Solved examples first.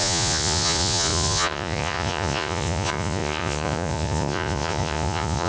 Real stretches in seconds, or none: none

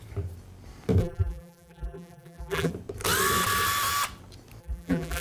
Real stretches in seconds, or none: 0.0-1.0; 2.7-4.6

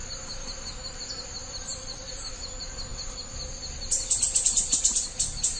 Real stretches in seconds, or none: 0.0-5.6

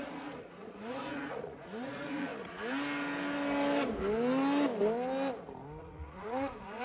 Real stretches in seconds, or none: 2.3-5.8

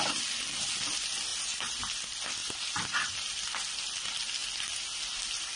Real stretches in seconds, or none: 0.0-1.3; 1.9-2.4; 3.1-5.6